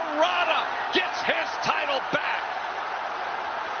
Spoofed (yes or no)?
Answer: no